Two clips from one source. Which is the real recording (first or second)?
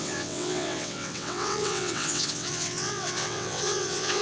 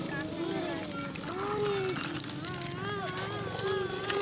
second